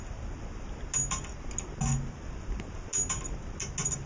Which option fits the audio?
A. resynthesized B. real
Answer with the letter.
B